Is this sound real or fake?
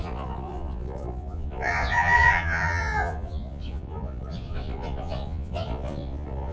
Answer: fake